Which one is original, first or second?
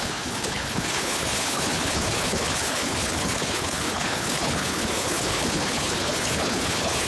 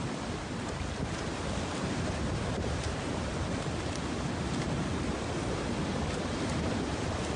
second